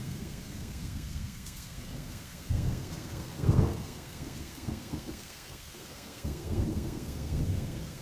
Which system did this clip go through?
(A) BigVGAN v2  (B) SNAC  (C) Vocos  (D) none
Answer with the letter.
B